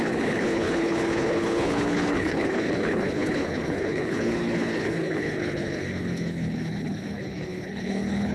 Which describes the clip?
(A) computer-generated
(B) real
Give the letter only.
A